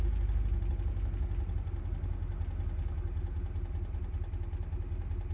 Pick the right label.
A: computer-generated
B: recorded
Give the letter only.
B